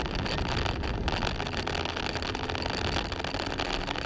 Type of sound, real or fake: real